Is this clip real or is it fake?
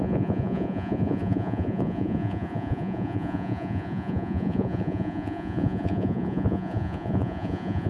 fake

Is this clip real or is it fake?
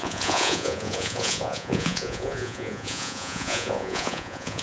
fake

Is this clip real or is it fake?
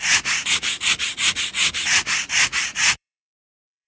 fake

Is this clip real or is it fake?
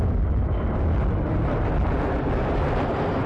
real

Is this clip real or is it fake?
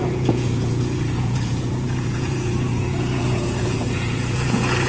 fake